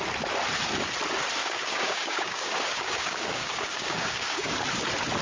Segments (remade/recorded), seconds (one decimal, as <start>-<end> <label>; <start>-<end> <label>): 0.0-1.4 recorded; 1.4-4.5 remade; 4.5-5.2 recorded